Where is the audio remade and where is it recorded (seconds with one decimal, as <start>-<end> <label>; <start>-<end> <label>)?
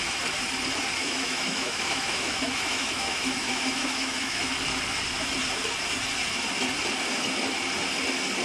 0.0-1.0 recorded; 1.0-4.5 remade; 4.5-8.4 recorded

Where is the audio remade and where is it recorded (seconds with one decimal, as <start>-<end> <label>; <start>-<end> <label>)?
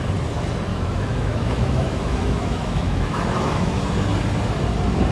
0.0-0.7 recorded; 0.7-3.8 remade; 3.8-5.1 recorded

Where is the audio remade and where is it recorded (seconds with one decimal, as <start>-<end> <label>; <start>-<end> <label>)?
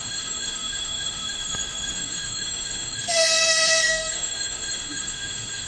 0.0-5.7 remade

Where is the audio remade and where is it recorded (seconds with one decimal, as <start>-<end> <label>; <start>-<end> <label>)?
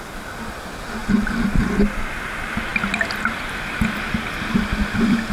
0.0-5.3 recorded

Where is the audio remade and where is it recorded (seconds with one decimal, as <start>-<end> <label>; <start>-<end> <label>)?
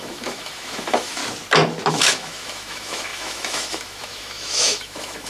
0.0-1.2 remade; 1.2-1.9 recorded; 1.9-5.3 remade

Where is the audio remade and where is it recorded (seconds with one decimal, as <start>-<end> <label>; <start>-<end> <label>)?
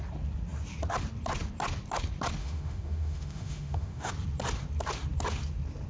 0.0-2.4 recorded; 2.4-4.1 remade; 4.1-5.9 recorded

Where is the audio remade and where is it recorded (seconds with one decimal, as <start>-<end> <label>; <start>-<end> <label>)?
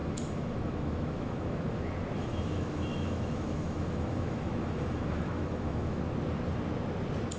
0.0-1.7 remade; 1.7-2.2 recorded; 2.2-6.0 remade; 6.0-7.4 recorded